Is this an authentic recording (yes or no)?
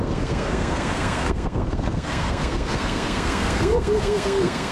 no